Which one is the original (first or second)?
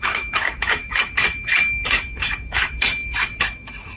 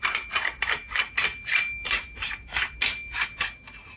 second